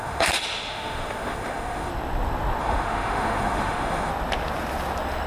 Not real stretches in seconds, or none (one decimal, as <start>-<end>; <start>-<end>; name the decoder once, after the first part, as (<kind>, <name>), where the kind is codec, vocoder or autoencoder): 0.0-1.9 (autoencoder, DAC-VAE); 2.6-4.1